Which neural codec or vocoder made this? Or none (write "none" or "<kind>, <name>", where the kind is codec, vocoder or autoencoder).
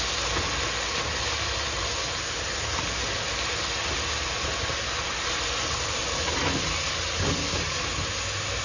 none